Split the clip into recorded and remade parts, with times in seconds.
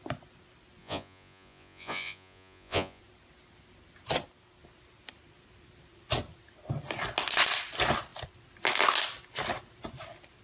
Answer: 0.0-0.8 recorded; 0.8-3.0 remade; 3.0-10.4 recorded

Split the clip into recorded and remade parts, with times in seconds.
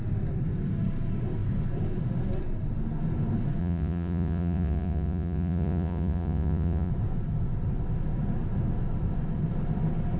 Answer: 0.0-3.6 recorded; 3.6-6.9 remade; 6.9-10.2 recorded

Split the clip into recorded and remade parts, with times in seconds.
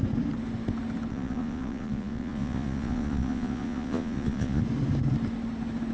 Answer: 0.0-1.1 recorded; 1.1-4.6 remade; 4.6-5.9 recorded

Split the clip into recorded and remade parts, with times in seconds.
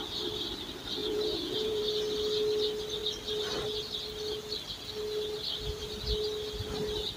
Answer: 0.0-1.0 recorded; 1.0-1.8 remade; 1.8-7.2 recorded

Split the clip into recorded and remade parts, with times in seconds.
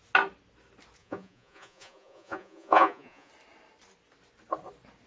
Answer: 0.0-1.0 recorded; 1.0-3.3 remade; 3.3-5.1 recorded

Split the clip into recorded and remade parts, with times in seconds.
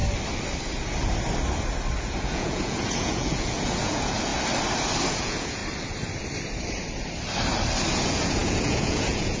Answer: 0.0-2.0 recorded; 2.0-4.3 remade; 4.3-5.1 recorded; 5.1-5.6 remade; 5.6-8.0 recorded; 8.0-9.4 remade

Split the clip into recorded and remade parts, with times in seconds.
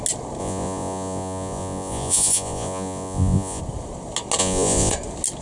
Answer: 0.0-0.4 recorded; 0.4-3.6 remade; 3.6-4.4 recorded; 4.4-4.9 remade; 4.9-5.4 recorded